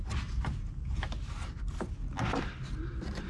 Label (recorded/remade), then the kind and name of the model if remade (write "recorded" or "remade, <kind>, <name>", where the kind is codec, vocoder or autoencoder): recorded